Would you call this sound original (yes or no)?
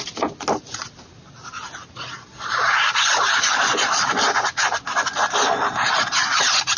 yes